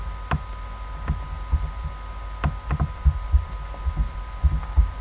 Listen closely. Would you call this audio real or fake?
real